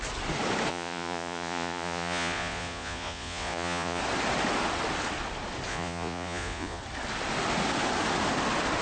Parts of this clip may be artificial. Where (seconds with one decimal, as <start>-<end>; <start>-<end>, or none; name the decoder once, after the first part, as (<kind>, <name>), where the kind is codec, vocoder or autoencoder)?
0.7-4.0 (vocoder, Vocos); 5.7-6.8